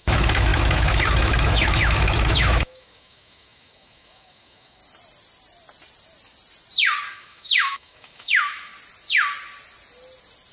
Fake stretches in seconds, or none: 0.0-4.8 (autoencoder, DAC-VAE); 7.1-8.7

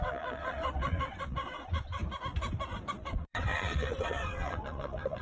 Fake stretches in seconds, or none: 0.0-2.0 (vocoder, WaveNeXt); 2.9-5.2

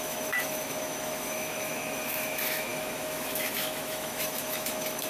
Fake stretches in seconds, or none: 0.0-5.1 (autoencoder, DAC-VAE)

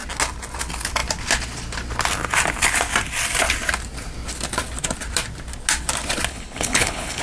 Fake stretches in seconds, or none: 6.3-7.2 (codec, HILCodec)

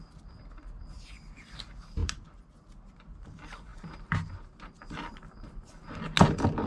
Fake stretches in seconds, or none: 2.0-2.5 (vocoder, BigVGAN v2); 3.7-4.9

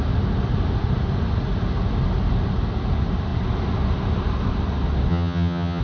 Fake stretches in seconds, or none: 5.1-5.8 (vocoder, HiFi-GAN)